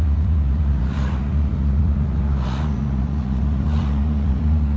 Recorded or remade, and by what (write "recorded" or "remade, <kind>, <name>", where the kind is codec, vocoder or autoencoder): remade, vocoder, Vocos